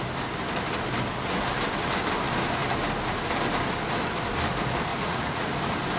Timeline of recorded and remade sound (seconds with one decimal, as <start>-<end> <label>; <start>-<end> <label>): 0.0-4.9 recorded; 4.9-5.5 remade; 5.5-6.0 recorded

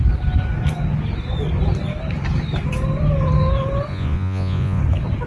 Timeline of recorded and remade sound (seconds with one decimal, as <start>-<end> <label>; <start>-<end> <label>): 0.0-3.9 recorded; 3.9-4.8 remade; 4.8-5.3 recorded

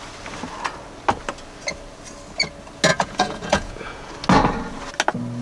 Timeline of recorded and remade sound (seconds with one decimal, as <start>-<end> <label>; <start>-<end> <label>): 0.0-2.9 recorded; 2.9-4.1 remade; 4.1-5.4 recorded

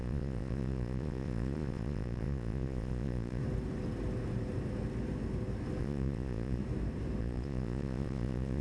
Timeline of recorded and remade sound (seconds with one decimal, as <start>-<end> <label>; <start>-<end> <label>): 0.0-3.4 remade; 3.4-5.8 recorded; 5.8-6.6 remade; 6.6-7.2 recorded; 7.2-8.6 remade